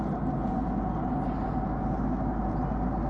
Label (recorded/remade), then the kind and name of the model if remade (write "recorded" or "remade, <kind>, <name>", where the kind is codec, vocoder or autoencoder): recorded